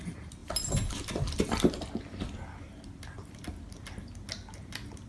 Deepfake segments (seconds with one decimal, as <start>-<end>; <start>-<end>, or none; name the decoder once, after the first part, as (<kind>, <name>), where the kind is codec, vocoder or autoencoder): none